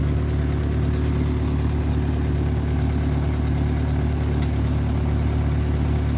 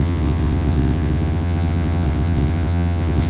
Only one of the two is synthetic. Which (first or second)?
second